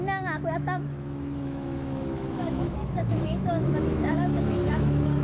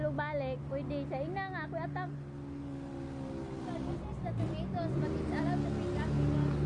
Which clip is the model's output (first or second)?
first